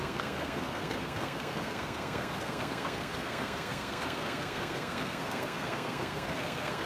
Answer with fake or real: fake